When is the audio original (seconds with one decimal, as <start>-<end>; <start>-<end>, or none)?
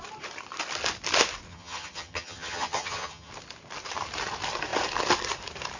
0.0-1.5; 3.3-5.8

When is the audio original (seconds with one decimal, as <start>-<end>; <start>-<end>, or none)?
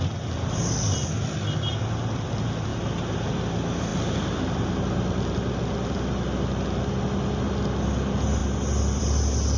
0.0-9.6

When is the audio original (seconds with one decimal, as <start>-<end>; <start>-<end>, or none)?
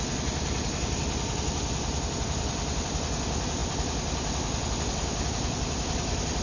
0.0-6.4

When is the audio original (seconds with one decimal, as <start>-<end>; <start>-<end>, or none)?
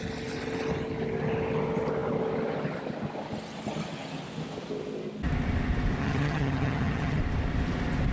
0.0-6.0; 7.2-8.1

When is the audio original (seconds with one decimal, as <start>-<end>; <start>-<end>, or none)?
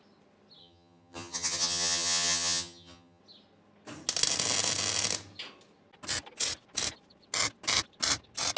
0.0-0.6; 3.2-8.6